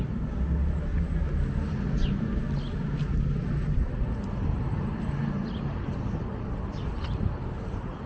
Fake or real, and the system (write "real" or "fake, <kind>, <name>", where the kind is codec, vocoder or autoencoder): real